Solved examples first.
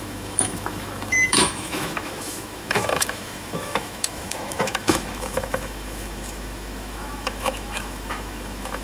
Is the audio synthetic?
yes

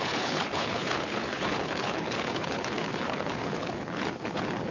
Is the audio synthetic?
yes